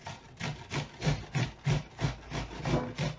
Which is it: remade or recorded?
recorded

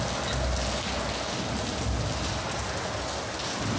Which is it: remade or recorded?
recorded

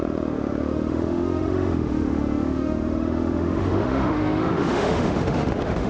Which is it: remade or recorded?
remade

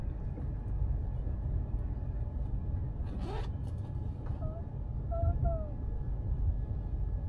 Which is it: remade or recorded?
recorded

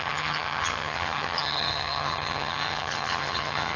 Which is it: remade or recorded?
remade